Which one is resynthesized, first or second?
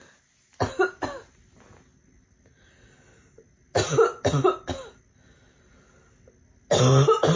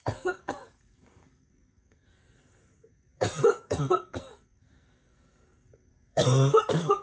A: second